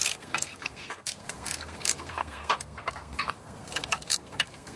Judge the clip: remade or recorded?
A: remade